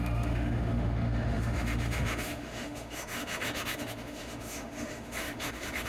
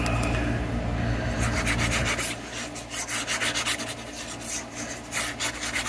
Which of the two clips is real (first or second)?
second